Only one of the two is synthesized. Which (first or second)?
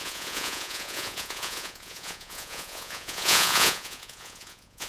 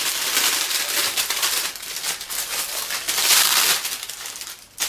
first